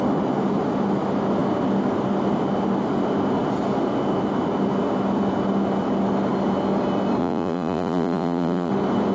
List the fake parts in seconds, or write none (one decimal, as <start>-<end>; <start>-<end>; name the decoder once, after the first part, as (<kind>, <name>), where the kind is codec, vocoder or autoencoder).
7.2-8.7 (vocoder, Vocos)